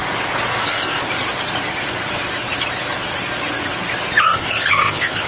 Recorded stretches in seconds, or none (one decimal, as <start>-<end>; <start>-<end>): 0.0-0.6; 1.0-4.2